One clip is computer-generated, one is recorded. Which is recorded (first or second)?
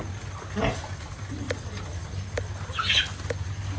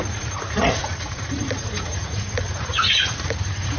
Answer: first